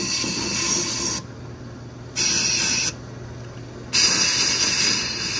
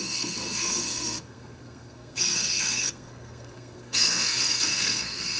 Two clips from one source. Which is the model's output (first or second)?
second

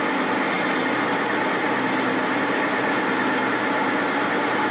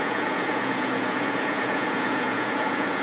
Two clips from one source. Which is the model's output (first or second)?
second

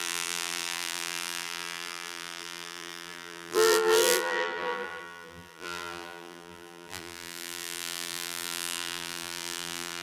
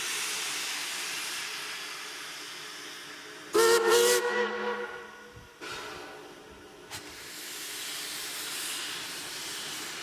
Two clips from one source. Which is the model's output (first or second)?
first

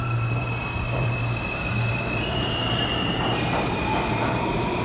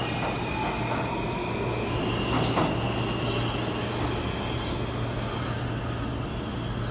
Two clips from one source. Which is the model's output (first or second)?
first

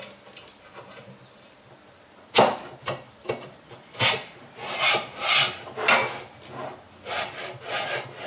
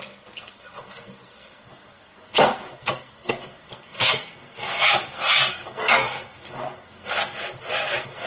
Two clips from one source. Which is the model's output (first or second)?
second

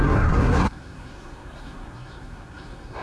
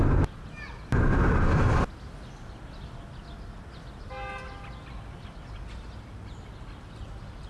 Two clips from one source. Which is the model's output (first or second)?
first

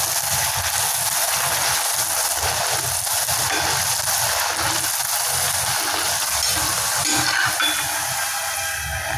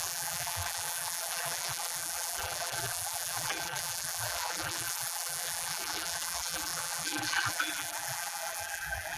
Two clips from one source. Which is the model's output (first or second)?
second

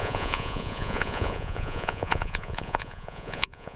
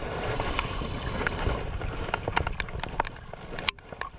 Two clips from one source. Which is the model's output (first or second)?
first